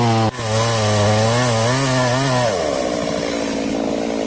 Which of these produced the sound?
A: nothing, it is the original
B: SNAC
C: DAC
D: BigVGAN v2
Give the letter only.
A